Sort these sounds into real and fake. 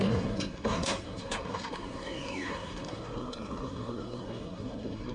fake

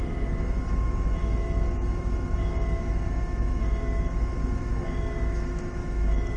fake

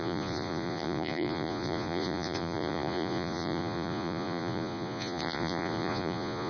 fake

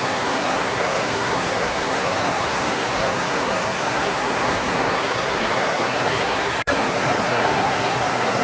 fake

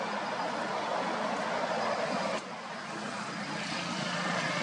real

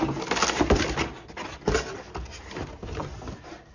real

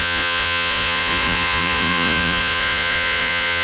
fake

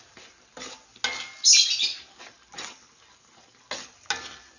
real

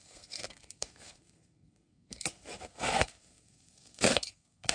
fake